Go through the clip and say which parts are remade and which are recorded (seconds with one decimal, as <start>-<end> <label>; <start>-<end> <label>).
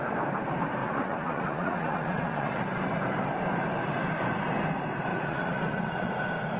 0.0-0.8 recorded; 0.8-2.6 remade; 2.6-5.1 recorded; 5.1-6.1 remade; 6.1-6.6 recorded